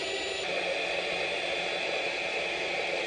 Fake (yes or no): no